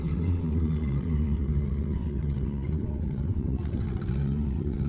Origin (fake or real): fake